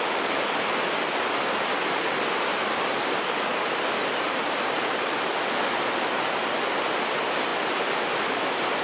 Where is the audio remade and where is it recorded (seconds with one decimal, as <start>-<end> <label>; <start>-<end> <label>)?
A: 0.0-8.8 recorded